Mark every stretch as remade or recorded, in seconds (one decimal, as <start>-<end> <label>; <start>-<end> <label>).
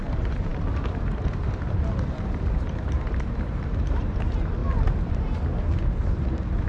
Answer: 0.0-4.6 remade; 4.6-5.1 recorded; 5.1-6.7 remade